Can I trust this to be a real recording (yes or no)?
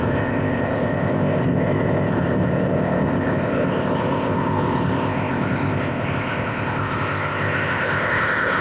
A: no